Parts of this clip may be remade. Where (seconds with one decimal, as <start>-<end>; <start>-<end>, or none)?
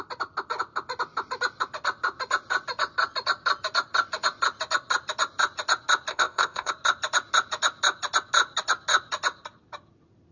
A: 6.1-6.7